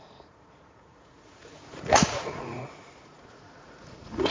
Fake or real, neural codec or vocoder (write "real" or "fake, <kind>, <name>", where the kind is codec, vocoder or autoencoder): fake, vocoder, Vocos